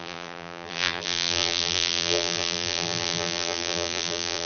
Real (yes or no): no